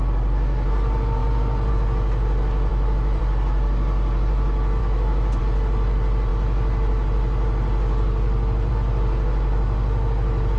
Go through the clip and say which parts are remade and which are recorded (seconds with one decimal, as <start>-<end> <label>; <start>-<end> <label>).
0.0-2.7 recorded; 2.7-3.2 remade; 3.2-4.8 recorded; 4.8-5.4 remade; 5.4-10.6 recorded